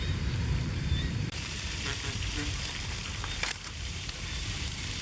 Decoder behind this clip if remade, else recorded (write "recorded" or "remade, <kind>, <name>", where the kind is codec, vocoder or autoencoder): remade, vocoder, BigVGAN v2